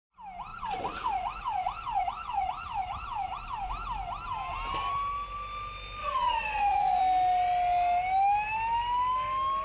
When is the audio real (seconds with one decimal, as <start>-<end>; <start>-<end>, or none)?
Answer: 0.0-0.5; 3.7-6.0; 7.0-9.6